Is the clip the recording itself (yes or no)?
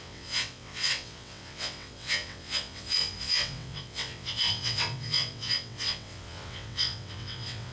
no